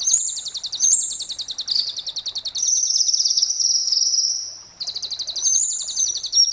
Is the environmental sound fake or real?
real